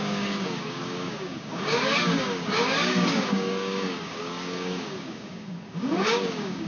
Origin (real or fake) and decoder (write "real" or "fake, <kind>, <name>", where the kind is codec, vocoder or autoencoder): fake, codec, DAC